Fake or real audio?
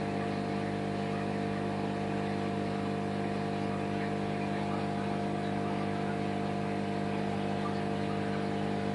real